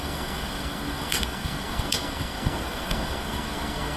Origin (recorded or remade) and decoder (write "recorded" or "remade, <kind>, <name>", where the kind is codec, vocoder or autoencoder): remade, codec, SNAC